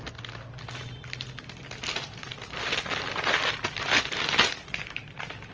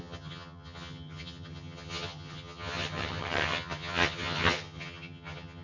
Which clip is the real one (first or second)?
first